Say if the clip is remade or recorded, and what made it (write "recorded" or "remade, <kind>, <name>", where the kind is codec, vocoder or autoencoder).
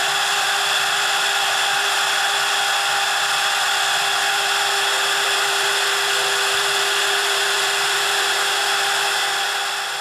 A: recorded